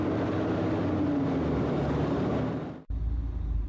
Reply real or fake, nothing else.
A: real